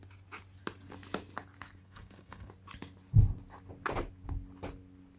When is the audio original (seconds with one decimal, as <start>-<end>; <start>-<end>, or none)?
0.0-1.8; 2.5-5.2